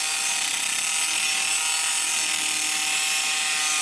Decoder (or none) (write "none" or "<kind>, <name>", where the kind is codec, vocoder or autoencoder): none